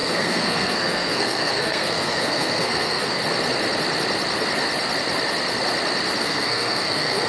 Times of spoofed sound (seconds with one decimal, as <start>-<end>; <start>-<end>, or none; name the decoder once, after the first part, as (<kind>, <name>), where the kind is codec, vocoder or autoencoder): 0.0-3.2 (codec, SNAC); 6.2-7.3